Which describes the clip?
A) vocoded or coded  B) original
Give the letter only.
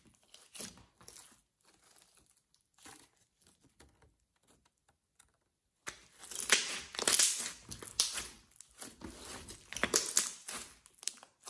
B